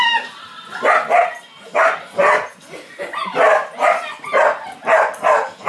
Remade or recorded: recorded